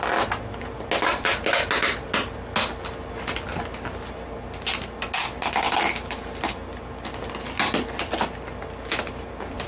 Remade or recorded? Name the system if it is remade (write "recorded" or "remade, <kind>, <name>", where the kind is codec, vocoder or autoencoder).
recorded